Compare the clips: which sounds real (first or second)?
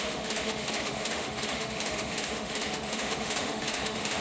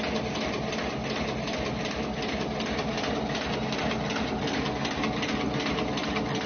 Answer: second